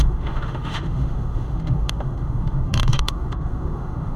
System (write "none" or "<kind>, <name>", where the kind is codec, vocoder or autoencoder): autoencoder, DAC-VAE